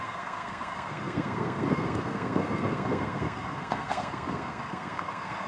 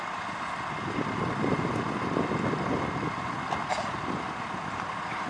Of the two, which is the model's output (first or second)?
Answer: first